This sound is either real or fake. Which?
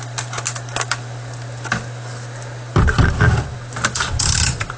real